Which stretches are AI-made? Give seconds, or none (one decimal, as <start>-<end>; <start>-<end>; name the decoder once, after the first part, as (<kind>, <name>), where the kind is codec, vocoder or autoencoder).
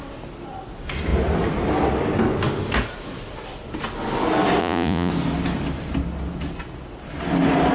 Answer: 4.6-5.1 (vocoder, Vocos)